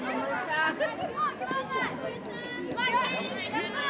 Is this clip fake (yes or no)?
no